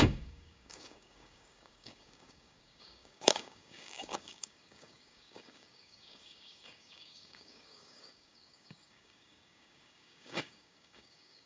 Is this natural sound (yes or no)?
no